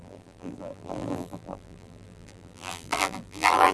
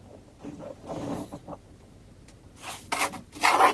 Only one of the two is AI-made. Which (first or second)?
first